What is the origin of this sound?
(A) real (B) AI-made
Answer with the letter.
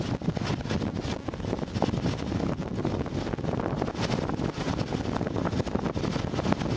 A